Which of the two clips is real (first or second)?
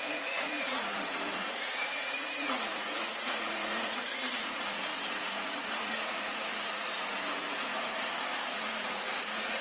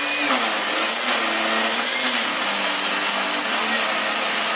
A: second